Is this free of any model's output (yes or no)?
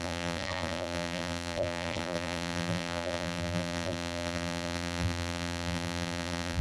no